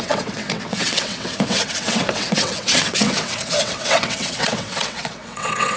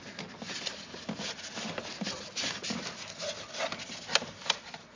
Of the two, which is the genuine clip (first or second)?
second